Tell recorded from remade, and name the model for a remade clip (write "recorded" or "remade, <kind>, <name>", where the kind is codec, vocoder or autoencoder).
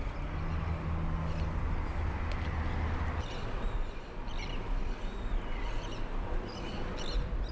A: recorded